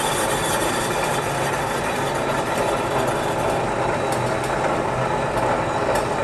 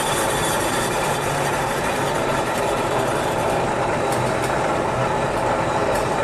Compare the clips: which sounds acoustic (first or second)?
first